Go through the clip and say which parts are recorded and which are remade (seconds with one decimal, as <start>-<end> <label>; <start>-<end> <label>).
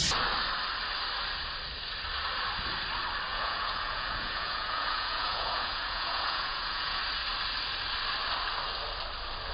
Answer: 0.0-3.3 recorded; 3.3-7.0 remade; 7.0-9.5 recorded